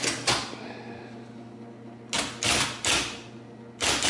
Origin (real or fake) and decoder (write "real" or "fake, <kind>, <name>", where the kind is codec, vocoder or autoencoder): real